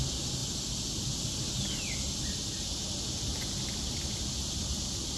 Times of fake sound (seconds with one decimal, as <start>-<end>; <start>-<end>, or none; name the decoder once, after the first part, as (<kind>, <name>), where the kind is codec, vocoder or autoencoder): none